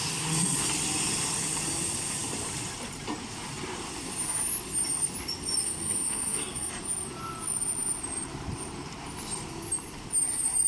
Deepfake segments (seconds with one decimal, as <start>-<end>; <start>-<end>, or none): 5.6-6.7